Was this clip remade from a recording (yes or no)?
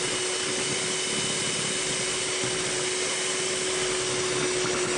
no